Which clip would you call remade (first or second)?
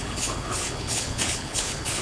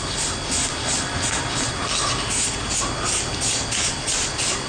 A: first